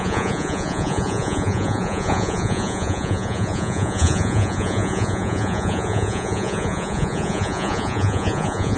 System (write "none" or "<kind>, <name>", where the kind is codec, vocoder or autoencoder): vocoder, Vocos